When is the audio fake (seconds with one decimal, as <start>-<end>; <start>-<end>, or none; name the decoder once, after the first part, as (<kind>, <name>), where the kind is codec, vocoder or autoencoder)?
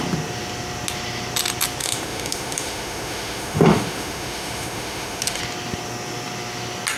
1.8-5.4 (autoencoder, DAC-VAE)